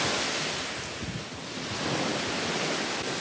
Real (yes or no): yes